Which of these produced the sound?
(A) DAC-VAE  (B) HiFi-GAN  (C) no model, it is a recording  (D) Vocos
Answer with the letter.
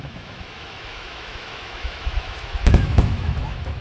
A